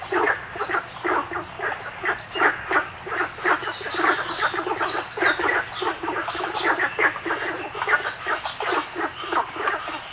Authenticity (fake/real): real